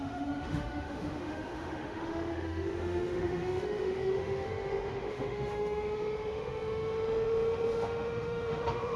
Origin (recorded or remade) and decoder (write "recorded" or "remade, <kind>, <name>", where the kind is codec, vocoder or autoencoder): remade, autoencoder, DAC-VAE